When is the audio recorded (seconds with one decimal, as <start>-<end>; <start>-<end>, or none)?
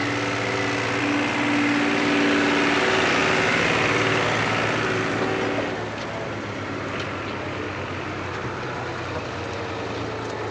0.0-10.5